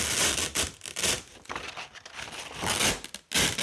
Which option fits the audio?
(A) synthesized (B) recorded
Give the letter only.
B